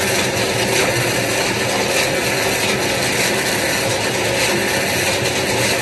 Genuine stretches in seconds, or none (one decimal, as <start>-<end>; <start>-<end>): 0.0-5.8